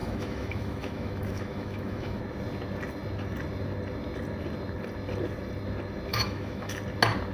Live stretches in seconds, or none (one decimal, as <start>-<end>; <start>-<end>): 2.2-6.1; 6.8-7.3